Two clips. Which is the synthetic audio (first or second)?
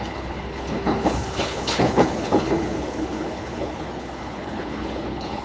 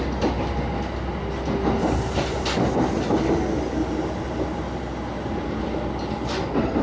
first